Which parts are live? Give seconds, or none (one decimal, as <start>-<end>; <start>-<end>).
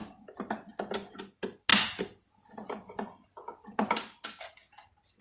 0.0-5.2